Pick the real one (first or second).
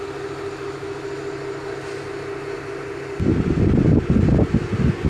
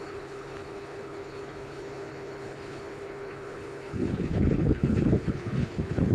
first